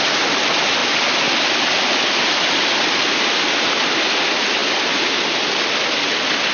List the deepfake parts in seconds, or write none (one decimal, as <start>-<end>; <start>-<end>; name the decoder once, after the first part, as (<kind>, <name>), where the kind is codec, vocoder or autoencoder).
none